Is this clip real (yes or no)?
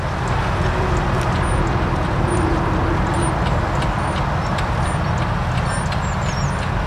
yes